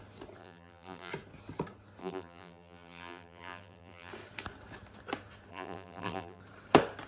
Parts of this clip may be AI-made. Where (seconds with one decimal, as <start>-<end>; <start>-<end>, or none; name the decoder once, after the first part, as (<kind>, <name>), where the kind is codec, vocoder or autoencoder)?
0.4-1.1 (vocoder, BigVGAN v2); 2.0-4.1; 5.5-6.4